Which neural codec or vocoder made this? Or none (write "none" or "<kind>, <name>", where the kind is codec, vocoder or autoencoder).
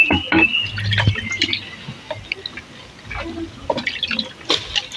none